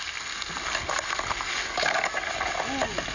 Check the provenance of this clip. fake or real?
real